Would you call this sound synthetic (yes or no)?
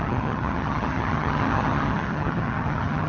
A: yes